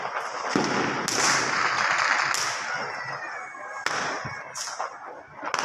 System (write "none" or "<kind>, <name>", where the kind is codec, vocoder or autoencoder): none